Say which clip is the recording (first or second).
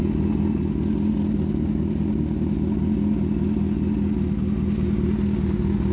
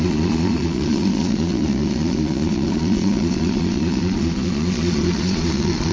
first